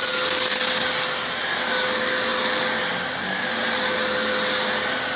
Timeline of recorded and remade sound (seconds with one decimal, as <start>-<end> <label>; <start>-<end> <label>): 0.0-5.2 recorded